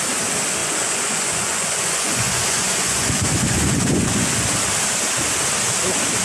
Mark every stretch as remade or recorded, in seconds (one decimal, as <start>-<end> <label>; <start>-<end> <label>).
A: 0.0-0.6 recorded; 0.6-4.3 remade; 4.3-6.2 recorded